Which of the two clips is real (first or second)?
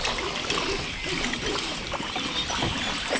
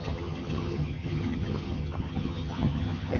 first